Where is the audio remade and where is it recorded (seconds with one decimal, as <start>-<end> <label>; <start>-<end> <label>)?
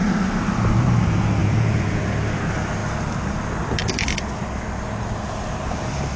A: 0.0-1.4 recorded; 1.4-2.0 remade; 2.0-6.2 recorded